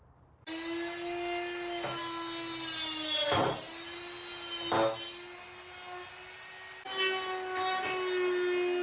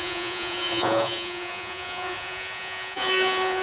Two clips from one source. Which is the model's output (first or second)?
second